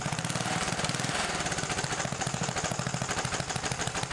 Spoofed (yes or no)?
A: yes